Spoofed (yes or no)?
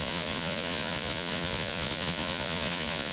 yes